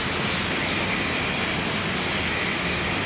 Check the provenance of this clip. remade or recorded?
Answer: recorded